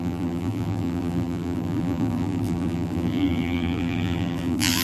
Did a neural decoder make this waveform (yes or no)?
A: yes